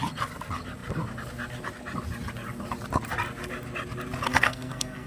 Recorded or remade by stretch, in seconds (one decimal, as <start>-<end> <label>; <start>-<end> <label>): 0.0-4.3 recorded; 4.3-5.1 remade